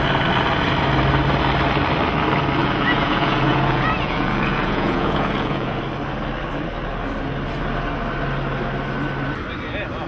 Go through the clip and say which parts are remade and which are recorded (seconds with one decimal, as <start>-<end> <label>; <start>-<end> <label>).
0.0-2.6 recorded; 2.6-5.8 remade; 5.8-10.1 recorded